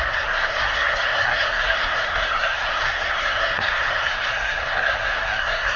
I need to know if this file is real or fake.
fake